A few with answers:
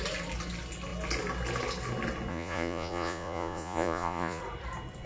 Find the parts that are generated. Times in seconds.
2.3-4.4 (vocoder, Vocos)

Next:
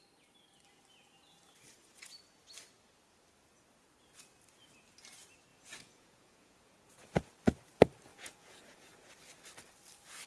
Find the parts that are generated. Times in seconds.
5.5-7.3 (vocoder, Vocos); 8.1-9.1

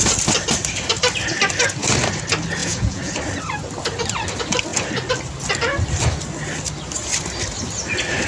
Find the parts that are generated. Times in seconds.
2.6-3.1 (vocoder, Vocos)

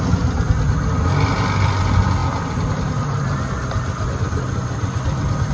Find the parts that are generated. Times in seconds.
none

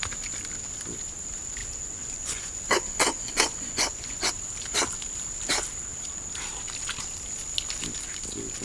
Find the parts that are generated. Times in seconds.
1.6-4.3 (vocoder, Vocos)

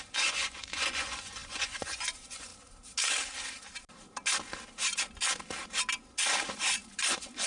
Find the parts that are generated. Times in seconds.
0.0-2.5 (vocoder, Vocos); 7.0-7.5

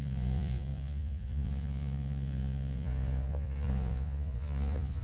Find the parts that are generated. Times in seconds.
0.0-5.0 (vocoder, Vocos)

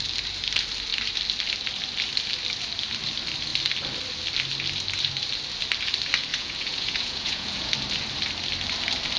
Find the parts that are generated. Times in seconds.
6.3-7.7 (vocoder, Vocos)